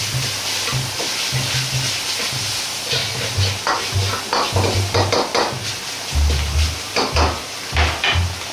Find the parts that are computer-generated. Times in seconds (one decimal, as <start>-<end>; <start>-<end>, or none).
3.0-3.8